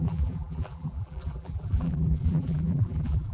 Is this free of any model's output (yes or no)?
no